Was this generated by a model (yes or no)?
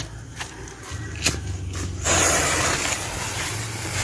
no